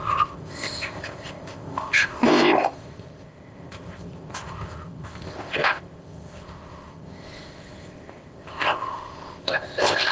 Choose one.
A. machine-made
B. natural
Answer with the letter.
A